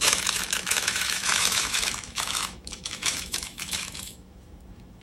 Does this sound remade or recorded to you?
remade